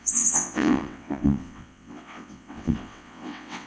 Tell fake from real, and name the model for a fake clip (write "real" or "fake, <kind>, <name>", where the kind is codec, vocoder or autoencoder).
fake, vocoder, WaveNeXt